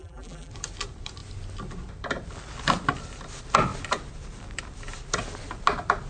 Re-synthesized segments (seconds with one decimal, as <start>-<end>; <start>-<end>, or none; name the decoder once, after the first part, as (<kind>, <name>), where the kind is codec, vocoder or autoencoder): 0.0-0.5 (vocoder, BigVGAN v2)